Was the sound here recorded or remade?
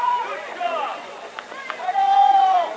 remade